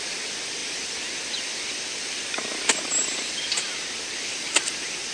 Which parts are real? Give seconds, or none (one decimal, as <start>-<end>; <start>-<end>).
0.0-5.1